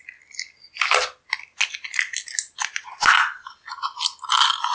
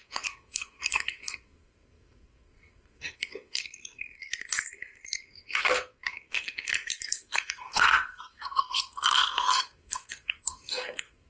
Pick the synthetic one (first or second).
second